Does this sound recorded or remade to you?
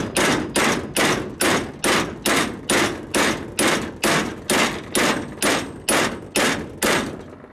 recorded